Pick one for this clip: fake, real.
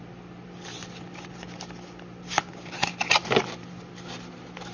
real